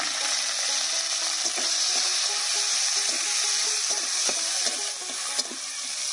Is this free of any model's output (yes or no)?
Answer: yes